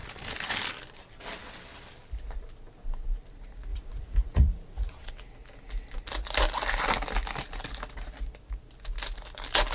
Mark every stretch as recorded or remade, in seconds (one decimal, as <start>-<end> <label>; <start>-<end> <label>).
0.0-3.7 recorded; 3.7-5.1 remade; 5.1-9.7 recorded